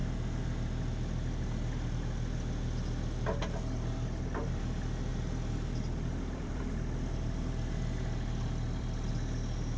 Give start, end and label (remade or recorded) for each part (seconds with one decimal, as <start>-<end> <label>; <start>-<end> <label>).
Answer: 0.0-5.1 recorded; 5.1-9.1 remade; 9.1-9.8 recorded

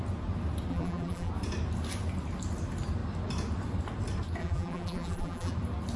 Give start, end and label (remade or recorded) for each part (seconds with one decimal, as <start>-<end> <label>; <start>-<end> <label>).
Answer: 0.0-0.7 recorded; 0.7-1.3 remade; 1.3-4.4 recorded; 4.4-5.5 remade; 5.5-6.0 recorded

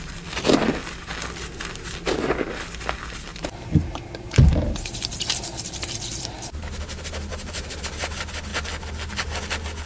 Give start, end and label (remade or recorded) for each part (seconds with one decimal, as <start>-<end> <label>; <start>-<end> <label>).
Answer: 0.0-3.3 recorded; 3.3-6.2 remade; 6.2-7.3 recorded; 7.3-7.8 remade; 7.8-9.9 recorded

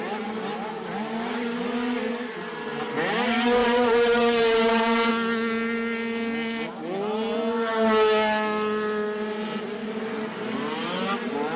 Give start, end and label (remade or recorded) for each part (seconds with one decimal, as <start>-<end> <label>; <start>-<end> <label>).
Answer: 0.0-3.6 recorded; 3.6-5.1 remade; 5.1-11.6 recorded

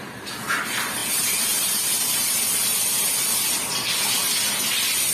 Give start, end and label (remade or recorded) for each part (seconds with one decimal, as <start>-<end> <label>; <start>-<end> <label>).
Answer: 0.0-5.1 recorded